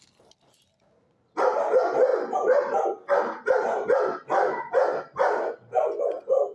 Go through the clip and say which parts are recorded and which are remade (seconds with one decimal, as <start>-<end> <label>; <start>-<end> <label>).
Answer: 0.0-6.5 recorded